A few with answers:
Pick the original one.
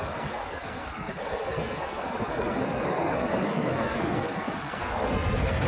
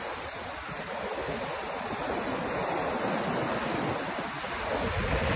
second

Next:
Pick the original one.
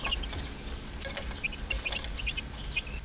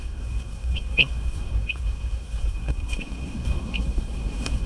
first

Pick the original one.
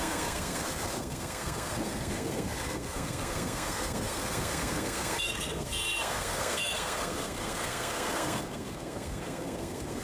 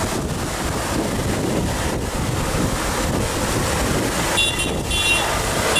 second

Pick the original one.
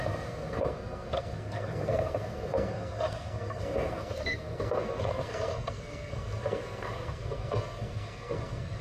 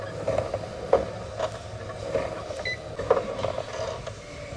second